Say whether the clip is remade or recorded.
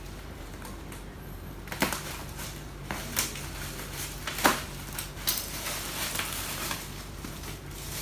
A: remade